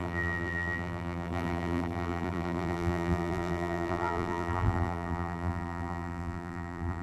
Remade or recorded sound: remade